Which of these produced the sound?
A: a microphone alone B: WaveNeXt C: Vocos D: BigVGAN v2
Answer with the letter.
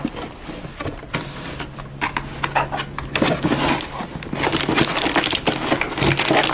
A